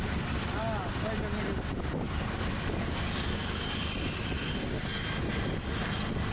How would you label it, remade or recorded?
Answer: recorded